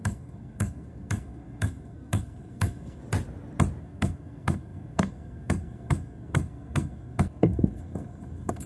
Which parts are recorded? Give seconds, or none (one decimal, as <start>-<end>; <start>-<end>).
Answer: 3.0-3.8